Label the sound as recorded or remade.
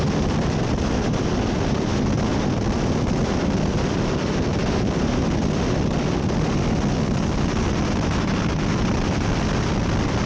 recorded